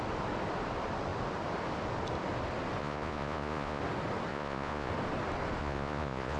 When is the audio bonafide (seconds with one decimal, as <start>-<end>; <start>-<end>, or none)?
0.0-2.8; 3.8-4.3; 4.9-5.6